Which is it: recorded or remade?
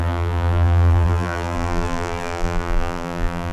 remade